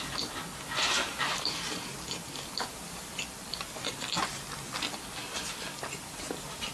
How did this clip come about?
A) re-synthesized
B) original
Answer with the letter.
B